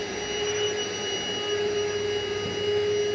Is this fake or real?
real